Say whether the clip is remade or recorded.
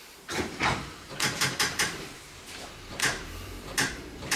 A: remade